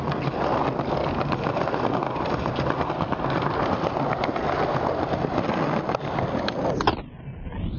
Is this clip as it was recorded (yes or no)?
yes